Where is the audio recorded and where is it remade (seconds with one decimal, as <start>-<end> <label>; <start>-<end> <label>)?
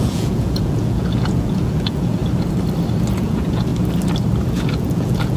0.0-2.2 remade; 2.2-3.1 recorded; 3.1-3.7 remade; 3.7-4.5 recorded; 4.5-5.4 remade